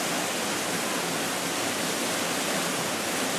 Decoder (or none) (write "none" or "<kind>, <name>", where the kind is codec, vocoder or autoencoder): none